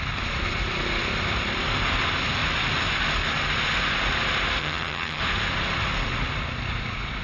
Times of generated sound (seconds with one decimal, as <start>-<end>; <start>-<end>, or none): 4.6-5.2